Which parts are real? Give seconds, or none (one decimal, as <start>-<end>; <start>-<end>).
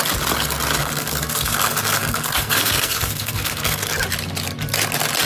0.0-0.8; 4.0-5.3